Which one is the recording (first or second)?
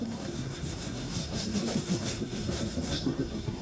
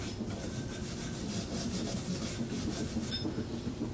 second